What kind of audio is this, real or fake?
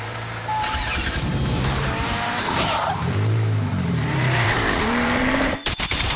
fake